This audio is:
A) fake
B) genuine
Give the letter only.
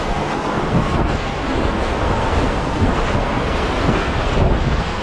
A